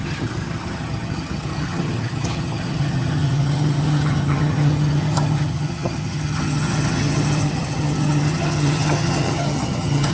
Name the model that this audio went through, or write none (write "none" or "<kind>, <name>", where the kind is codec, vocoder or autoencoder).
vocoder, HiFi-GAN